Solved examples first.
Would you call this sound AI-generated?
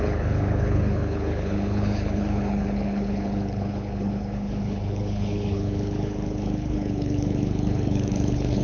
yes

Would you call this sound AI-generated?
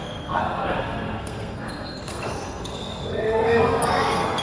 yes